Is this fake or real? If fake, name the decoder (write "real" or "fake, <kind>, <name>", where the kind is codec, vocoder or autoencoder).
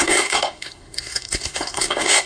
fake, codec, SNAC